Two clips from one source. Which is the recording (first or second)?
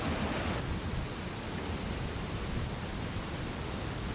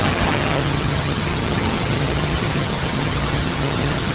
first